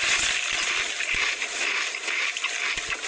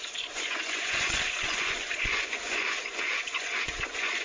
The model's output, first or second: second